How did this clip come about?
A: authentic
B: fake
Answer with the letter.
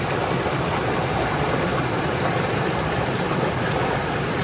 A